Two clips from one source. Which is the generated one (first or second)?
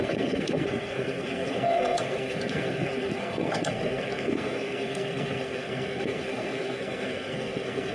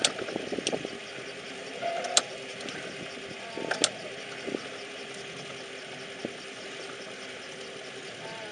first